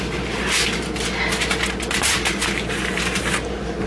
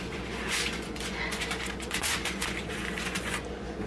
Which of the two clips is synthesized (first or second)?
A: second